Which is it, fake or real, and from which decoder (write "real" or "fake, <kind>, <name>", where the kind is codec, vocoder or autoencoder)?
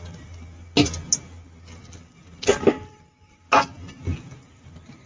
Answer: real